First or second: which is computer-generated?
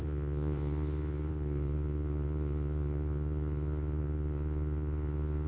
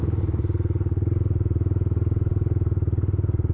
first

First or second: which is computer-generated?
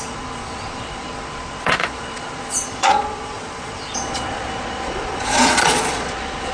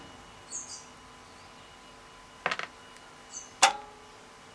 first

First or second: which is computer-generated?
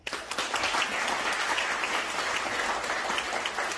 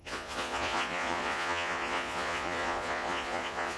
second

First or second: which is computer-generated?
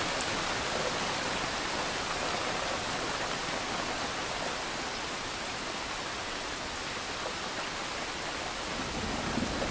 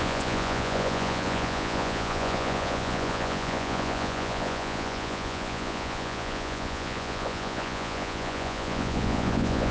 second